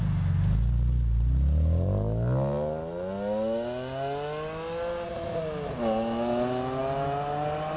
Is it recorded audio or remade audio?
recorded